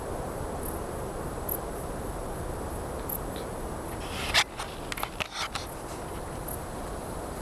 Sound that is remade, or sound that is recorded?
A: recorded